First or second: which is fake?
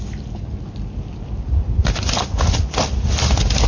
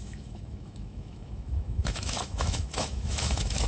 second